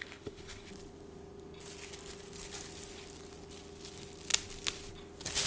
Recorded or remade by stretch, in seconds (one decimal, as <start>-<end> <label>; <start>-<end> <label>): 0.0-0.7 remade; 0.7-5.5 recorded